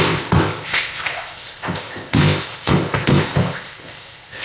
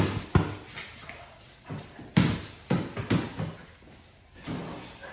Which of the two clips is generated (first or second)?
first